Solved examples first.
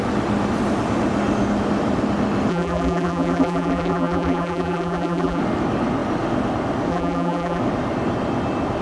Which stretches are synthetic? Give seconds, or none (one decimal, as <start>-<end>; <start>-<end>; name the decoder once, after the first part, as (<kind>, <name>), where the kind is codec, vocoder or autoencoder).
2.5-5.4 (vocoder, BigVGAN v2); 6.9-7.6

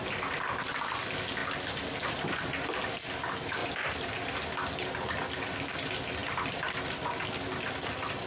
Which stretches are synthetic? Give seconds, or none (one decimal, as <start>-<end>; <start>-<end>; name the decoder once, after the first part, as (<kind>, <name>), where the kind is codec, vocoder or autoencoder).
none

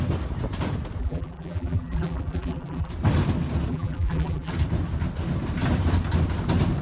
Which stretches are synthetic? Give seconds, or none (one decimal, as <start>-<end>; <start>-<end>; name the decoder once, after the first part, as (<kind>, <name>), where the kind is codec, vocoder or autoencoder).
1.0-2.9 (vocoder, BigVGAN v2); 3.7-4.5

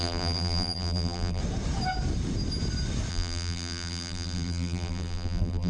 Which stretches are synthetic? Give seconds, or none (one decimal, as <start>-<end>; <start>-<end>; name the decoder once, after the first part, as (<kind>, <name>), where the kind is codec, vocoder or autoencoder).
0.0-1.4 (vocoder, BigVGAN v2); 3.1-5.7

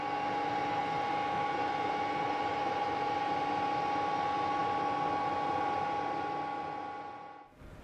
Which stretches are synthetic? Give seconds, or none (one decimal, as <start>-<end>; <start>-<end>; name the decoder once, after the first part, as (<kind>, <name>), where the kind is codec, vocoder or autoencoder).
2.5-3.1 (vocoder, BigVGAN v2)

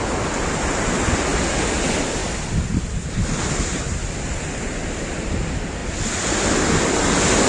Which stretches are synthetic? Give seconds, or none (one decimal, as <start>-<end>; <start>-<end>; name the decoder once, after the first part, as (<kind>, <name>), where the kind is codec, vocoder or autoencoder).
none